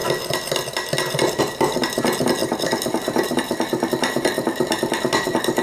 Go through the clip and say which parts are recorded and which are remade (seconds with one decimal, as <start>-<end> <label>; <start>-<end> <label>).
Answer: 0.0-1.4 recorded; 1.4-5.6 remade